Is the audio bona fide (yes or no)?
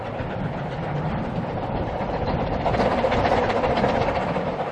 no